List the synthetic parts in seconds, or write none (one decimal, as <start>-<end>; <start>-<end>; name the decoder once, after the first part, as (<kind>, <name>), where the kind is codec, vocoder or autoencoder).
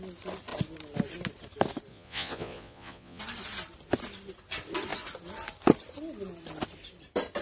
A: 1.9-3.2 (vocoder, Vocos)